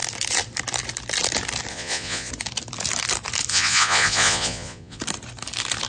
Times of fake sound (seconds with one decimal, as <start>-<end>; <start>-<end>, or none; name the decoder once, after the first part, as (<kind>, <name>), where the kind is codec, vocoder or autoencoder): 1.7-2.3 (vocoder, Vocos); 3.5-5.0